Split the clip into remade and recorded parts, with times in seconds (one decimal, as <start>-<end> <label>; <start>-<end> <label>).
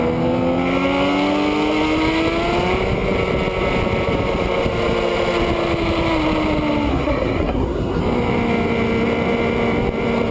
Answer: 0.0-6.9 recorded; 6.9-8.0 remade; 8.0-10.3 recorded